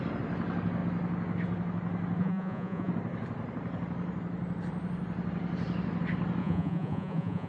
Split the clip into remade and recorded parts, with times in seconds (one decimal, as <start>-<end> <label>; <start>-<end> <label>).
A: 0.0-2.2 recorded; 2.2-2.9 remade; 2.9-6.4 recorded; 6.4-7.5 remade